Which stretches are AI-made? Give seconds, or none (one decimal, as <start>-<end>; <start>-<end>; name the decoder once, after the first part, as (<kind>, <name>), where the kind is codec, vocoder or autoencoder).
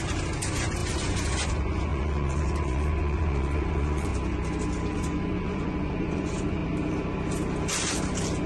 0.0-4.1 (vocoder, Vocos); 4.9-6.6